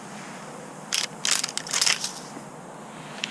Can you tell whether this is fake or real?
real